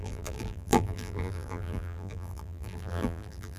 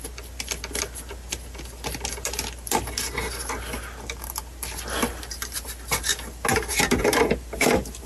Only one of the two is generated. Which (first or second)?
first